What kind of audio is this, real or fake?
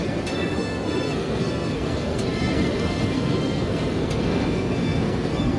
fake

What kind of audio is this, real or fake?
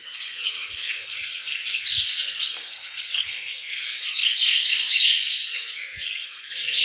fake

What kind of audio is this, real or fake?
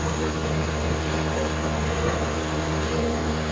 fake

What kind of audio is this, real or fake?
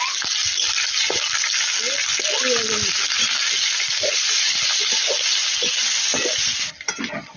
real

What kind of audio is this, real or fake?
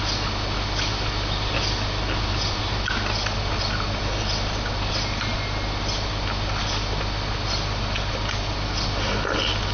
real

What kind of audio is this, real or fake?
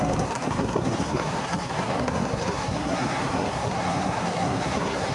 fake